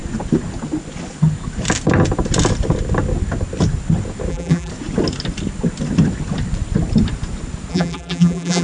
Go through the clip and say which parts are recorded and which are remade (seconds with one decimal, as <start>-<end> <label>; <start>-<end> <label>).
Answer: 0.0-4.3 recorded; 4.3-4.7 remade; 4.7-7.7 recorded; 7.7-8.6 remade